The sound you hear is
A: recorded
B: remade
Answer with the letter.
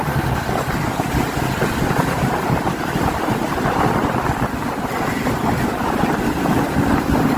A